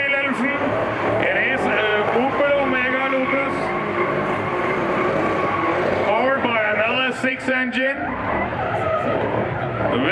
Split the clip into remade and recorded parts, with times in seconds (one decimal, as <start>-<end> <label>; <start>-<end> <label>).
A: 0.0-10.1 remade